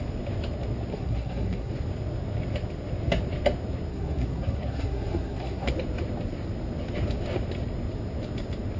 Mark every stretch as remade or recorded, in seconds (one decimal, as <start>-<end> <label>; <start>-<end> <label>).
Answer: 0.0-0.9 recorded; 0.9-1.7 remade; 1.7-3.9 recorded; 3.9-5.7 remade; 5.7-8.8 recorded